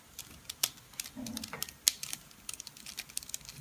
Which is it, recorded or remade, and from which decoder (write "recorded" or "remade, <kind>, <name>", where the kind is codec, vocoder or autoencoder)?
recorded